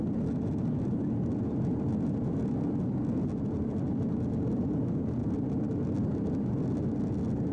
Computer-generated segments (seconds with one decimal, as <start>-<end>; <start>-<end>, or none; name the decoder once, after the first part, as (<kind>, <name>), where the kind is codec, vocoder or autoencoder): 5.2-5.7 (vocoder, BigVGAN v2)